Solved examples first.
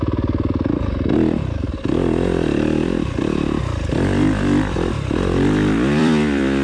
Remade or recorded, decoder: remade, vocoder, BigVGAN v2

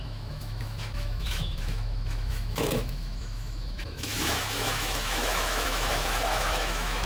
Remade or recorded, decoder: remade, autoencoder, DAC-VAE